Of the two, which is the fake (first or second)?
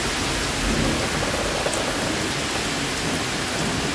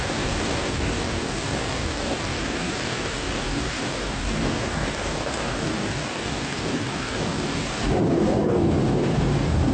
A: second